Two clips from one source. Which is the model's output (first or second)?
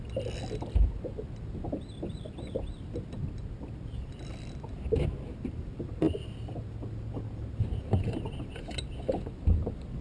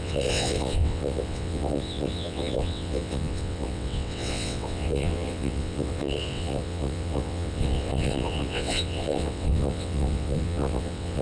second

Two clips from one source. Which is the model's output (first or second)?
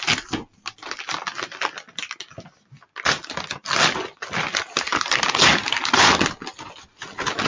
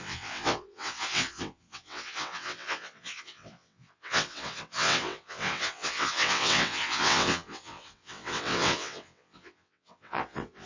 second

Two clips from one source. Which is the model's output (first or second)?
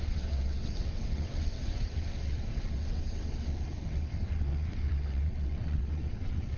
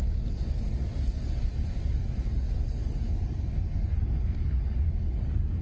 first